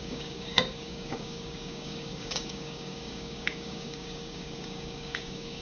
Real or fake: fake